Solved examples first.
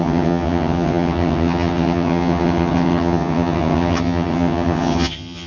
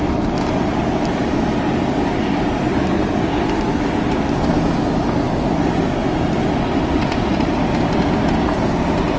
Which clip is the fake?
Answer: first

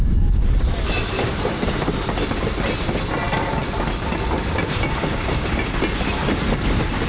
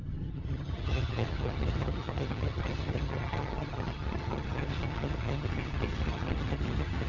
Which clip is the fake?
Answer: second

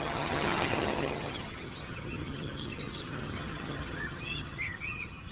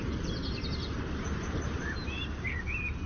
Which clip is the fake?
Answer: first